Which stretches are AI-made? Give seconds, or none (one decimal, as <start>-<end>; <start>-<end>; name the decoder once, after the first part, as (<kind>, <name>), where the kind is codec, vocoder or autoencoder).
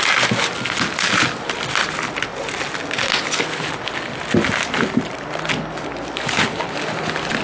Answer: none